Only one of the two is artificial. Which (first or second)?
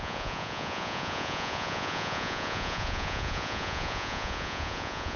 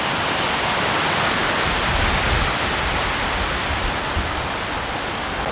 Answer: first